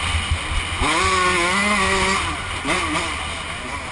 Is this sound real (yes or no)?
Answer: yes